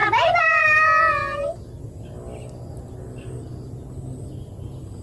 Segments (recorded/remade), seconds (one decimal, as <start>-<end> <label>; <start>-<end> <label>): 0.0-5.0 recorded